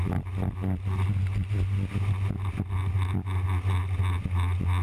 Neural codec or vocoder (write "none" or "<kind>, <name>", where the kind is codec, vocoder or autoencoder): none